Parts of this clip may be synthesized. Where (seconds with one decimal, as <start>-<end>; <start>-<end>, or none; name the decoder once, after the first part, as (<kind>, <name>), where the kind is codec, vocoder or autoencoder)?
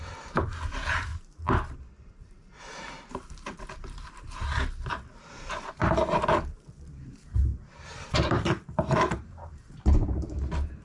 0.0-1.1 (vocoder, BigVGAN v2); 2.1-10.8